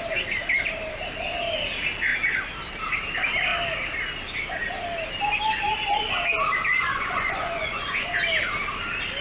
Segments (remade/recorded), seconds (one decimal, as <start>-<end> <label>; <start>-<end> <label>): 0.0-6.7 recorded; 6.7-8.1 remade; 8.1-9.2 recorded